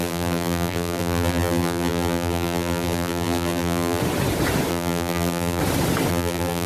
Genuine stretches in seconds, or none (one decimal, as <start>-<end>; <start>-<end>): 4.0-4.7; 5.6-6.1